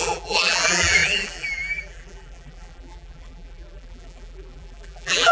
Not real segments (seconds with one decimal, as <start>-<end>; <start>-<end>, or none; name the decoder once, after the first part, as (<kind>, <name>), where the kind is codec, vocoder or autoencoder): 0.0-5.3 (vocoder, BigVGAN v2)